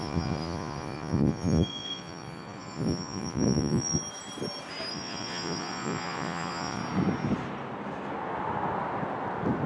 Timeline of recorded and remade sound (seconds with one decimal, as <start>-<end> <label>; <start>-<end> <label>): 0.0-4.0 remade; 4.0-4.9 recorded; 4.9-6.8 remade; 6.8-9.7 recorded

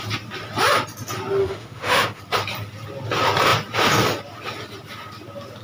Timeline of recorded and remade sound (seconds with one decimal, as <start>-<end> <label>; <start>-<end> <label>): 0.0-1.4 recorded; 1.4-2.2 remade; 2.2-5.6 recorded

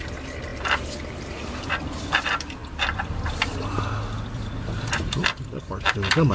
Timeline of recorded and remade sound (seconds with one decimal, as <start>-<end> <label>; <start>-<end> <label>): 0.0-2.6 remade; 2.6-4.3 recorded; 4.3-6.3 remade

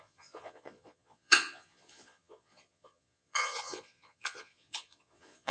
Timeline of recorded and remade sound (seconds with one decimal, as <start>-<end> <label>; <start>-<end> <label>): 0.0-5.5 remade

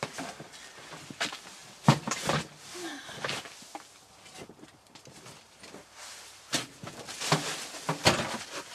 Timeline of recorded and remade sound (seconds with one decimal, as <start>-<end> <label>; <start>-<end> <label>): 0.0-8.7 recorded